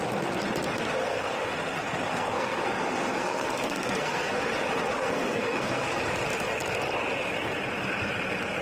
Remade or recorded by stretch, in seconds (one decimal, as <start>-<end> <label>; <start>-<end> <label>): 0.0-1.0 recorded; 1.0-1.5 remade; 1.5-2.1 recorded; 2.1-4.4 remade; 4.4-5.0 recorded; 5.0-5.9 remade; 5.9-8.6 recorded